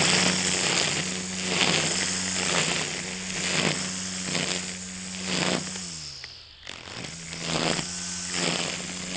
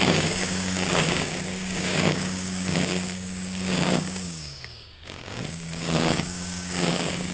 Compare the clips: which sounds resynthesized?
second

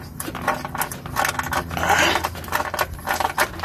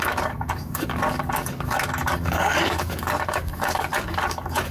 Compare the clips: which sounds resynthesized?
second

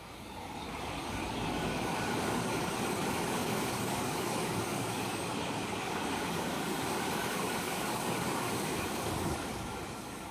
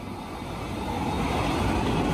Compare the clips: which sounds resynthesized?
first